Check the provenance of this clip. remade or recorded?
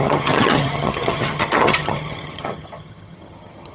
remade